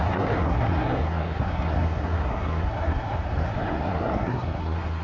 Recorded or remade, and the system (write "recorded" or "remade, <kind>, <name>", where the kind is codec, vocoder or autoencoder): remade, codec, SNAC